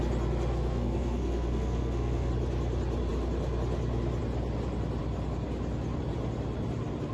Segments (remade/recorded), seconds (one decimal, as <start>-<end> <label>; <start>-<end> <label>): 0.0-0.5 recorded; 0.5-2.3 remade; 2.3-7.1 recorded